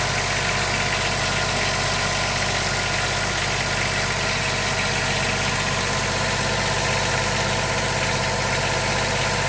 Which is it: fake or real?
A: real